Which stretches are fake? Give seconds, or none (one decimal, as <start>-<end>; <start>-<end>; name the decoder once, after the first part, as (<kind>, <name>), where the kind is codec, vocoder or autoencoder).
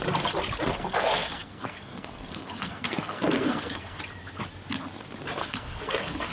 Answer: 0.7-4.0 (codec, SNAC); 5.4-6.3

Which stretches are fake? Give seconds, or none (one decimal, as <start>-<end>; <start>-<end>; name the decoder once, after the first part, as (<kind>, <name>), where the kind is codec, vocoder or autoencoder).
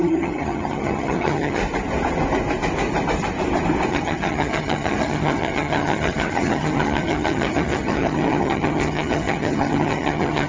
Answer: 0.0-1.6 (vocoder, HiFi-GAN); 3.9-10.5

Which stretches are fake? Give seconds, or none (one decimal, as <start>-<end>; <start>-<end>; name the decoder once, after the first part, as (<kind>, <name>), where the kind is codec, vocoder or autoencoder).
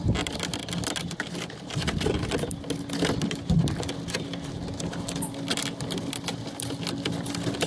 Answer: none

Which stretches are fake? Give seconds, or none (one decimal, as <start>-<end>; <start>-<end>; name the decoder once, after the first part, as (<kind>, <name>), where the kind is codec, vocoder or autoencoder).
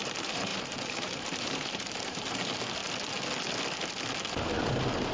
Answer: 0.0-2.8 (vocoder, BigVGAN v2); 4.3-5.1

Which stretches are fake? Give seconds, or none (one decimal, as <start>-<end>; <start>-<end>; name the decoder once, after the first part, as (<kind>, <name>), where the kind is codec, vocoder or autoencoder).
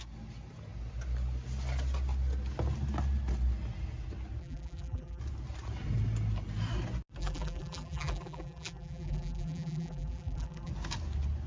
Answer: 4.4-5.2 (vocoder, BigVGAN v2); 7.2-10.7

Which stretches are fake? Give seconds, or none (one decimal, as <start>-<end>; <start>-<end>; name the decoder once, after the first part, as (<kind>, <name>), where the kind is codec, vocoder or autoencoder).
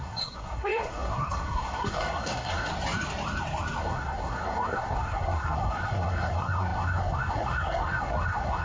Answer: 0.0-2.7 (codec, SNAC); 3.8-8.6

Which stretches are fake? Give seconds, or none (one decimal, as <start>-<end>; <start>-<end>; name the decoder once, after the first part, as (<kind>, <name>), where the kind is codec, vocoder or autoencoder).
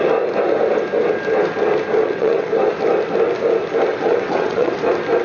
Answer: 2.0-2.5 (vocoder, WaveNeXt); 3.9-4.8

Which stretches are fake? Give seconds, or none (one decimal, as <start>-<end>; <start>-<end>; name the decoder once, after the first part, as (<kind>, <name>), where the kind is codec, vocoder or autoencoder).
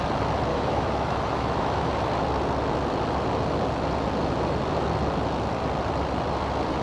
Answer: 0.5-1.9 (autoencoder, DAC-VAE)